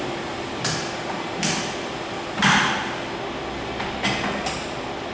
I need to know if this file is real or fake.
real